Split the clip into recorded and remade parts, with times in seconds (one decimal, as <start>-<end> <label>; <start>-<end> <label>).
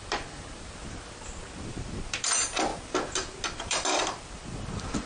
0.0-5.1 recorded